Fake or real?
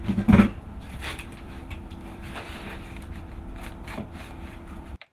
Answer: fake